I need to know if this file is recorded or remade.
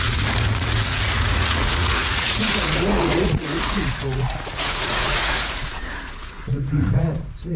remade